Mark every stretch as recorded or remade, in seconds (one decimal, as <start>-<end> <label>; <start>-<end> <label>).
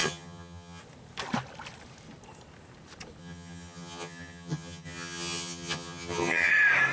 0.0-0.8 remade; 0.8-3.2 recorded; 3.2-6.5 remade; 6.5-6.9 recorded